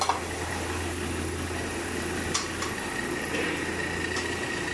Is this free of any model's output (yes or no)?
yes